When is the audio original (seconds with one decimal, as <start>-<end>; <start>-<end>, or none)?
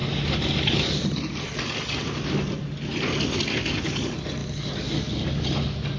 0.0-6.0